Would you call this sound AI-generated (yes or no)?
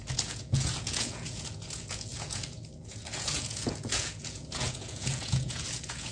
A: yes